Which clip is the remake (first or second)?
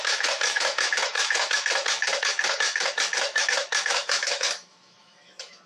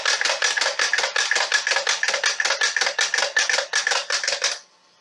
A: first